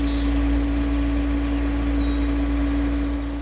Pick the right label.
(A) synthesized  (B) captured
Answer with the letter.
B